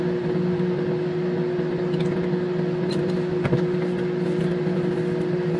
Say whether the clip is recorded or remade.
recorded